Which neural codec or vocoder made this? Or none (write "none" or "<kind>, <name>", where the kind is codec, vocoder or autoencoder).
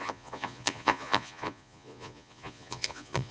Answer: vocoder, Vocos